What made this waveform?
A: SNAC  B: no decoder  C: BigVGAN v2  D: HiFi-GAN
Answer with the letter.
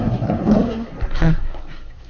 A